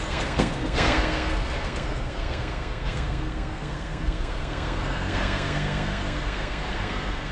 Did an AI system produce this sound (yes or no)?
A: yes